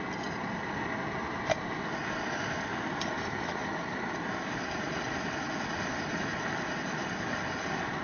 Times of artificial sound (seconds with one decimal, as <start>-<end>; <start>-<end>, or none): none